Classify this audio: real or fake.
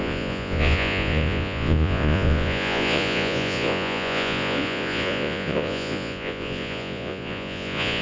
fake